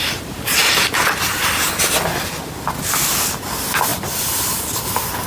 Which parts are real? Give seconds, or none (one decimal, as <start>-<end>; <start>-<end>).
0.0-5.3